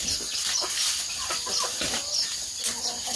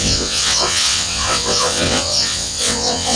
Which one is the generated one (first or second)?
second